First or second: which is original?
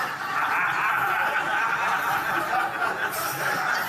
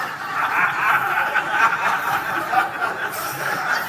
first